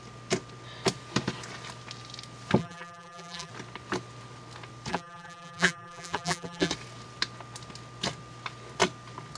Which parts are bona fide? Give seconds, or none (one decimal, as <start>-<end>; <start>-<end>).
0.0-2.6; 3.5-4.9; 6.7-9.4